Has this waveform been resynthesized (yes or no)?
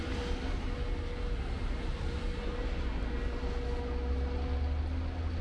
no